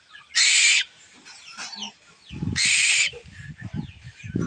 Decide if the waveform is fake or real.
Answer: real